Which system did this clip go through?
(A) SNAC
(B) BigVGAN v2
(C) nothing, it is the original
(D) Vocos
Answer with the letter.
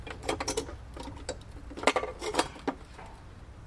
C